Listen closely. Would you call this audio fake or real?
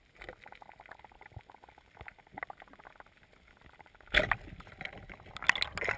real